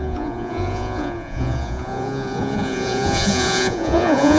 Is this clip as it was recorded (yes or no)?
no